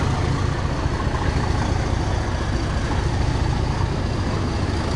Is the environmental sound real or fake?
real